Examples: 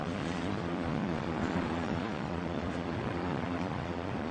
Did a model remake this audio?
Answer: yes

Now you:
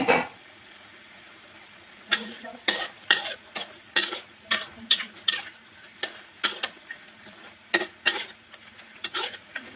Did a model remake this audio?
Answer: yes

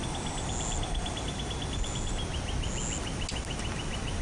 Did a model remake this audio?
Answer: no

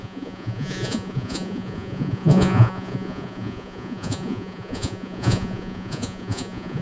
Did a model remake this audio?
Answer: yes